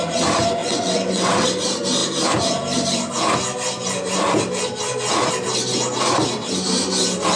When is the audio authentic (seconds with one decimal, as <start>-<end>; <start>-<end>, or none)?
0.0-0.6; 1.5-7.4